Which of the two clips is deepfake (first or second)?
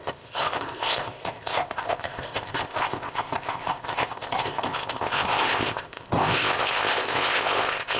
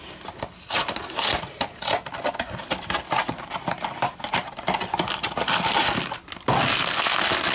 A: first